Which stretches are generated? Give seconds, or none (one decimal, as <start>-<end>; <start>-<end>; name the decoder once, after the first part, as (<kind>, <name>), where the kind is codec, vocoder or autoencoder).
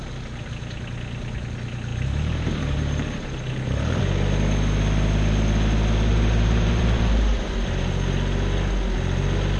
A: 1.9-4.0 (vocoder, BigVGAN v2); 6.1-7.9